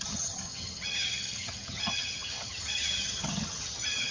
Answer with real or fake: fake